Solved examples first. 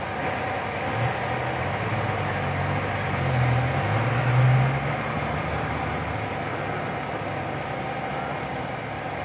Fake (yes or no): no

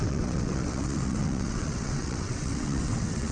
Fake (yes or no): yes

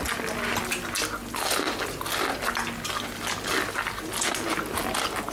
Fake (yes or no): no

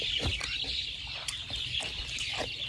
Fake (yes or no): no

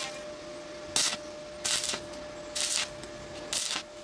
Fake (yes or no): no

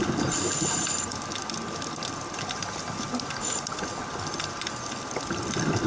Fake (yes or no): yes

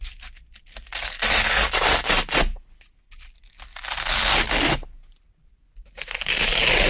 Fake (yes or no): no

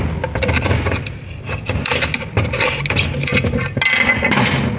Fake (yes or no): no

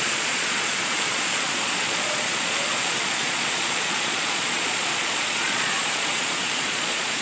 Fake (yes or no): yes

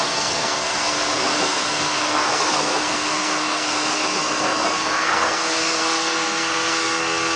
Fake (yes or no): yes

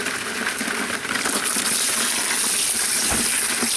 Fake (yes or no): no